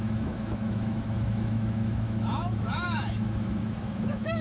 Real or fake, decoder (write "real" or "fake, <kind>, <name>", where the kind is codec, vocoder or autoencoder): fake, autoencoder, DAC-VAE